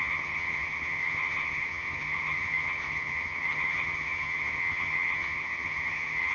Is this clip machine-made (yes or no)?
yes